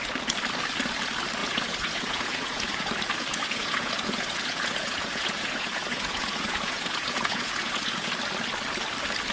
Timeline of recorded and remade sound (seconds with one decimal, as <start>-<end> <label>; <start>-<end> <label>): 0.0-1.4 recorded; 1.4-2.9 remade; 2.9-3.3 recorded; 3.3-8.1 remade; 8.1-9.3 recorded